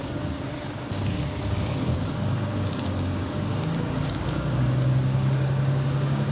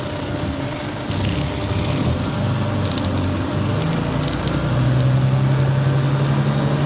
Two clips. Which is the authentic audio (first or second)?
second